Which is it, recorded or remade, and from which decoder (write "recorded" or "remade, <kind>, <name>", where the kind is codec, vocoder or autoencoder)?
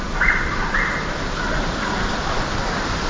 recorded